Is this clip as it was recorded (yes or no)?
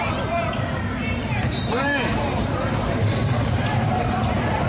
no